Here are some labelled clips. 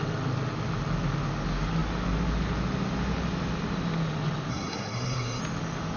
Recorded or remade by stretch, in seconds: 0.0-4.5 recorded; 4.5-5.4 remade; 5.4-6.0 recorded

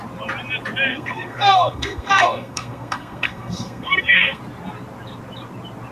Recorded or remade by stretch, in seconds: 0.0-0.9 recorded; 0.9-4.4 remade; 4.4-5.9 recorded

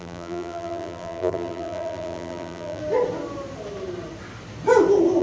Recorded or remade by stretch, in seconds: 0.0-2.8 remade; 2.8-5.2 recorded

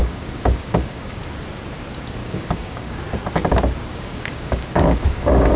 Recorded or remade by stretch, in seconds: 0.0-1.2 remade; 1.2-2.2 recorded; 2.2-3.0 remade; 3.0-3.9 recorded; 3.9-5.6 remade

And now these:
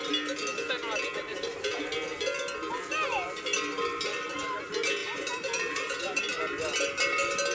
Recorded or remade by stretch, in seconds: 0.0-1.3 recorded; 1.3-1.9 remade; 1.9-5.0 recorded; 5.0-6.2 remade; 6.2-7.5 recorded

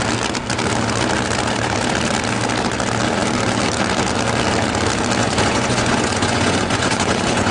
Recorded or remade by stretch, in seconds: 0.0-5.2 recorded; 5.2-7.5 remade

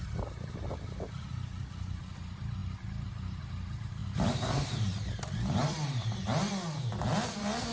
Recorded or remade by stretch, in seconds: 0.0-4.0 recorded; 4.0-5.1 remade; 5.1-7.7 recorded

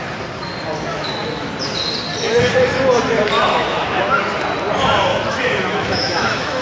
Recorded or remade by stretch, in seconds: 0.0-0.9 recorded; 0.9-1.5 remade; 1.5-3.5 recorded; 3.5-4.2 remade; 4.2-5.1 recorded; 5.1-6.6 remade